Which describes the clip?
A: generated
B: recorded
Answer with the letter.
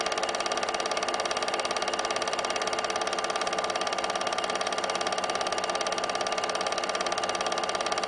B